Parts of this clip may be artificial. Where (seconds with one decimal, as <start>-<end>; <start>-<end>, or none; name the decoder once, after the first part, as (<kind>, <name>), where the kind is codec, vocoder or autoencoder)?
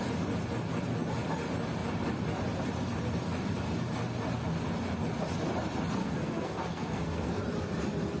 6.0-7.4 (codec, SNAC)